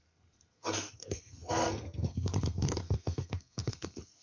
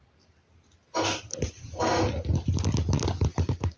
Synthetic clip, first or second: first